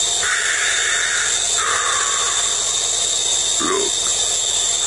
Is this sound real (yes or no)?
yes